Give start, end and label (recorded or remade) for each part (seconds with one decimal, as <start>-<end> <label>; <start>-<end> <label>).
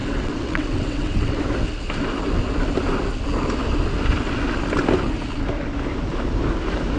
0.0-1.4 remade; 1.4-7.0 recorded